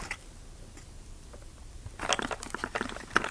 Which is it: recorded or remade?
recorded